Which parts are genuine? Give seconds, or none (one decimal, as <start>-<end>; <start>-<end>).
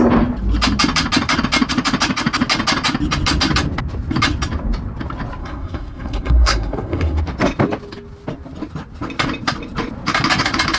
0.0-5.4; 7.2-10.8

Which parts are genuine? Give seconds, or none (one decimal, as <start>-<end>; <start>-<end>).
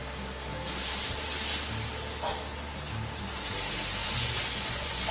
0.0-4.0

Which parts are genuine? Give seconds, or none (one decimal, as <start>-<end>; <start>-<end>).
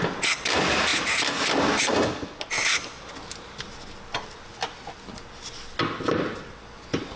0.0-7.2